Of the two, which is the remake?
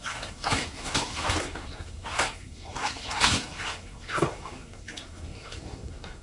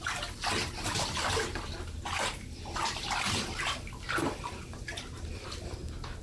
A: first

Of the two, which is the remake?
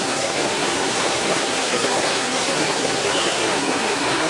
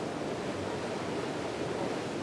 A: first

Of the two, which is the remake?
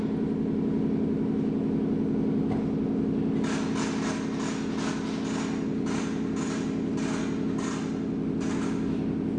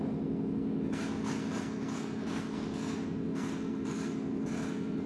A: second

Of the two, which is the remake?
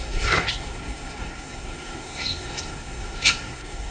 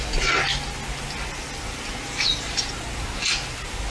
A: first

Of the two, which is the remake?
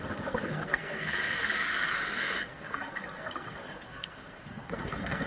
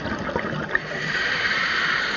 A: first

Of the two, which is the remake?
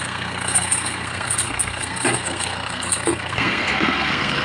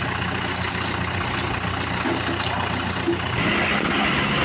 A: first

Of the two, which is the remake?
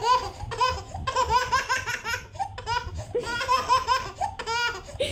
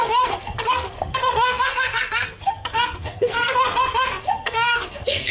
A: second